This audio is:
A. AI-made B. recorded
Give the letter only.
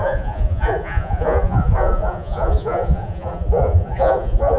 A